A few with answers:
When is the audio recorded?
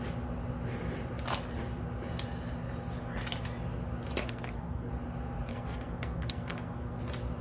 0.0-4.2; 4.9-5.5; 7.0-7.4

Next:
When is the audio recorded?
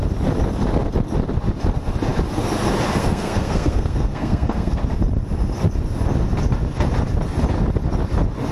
0.0-3.0; 4.8-8.5